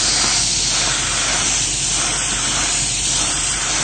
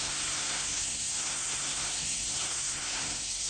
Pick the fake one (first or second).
second